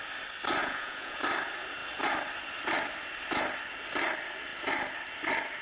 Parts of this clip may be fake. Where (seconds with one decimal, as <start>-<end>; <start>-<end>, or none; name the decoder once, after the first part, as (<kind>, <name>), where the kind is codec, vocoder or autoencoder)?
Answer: 0.6-1.2 (vocoder, Vocos)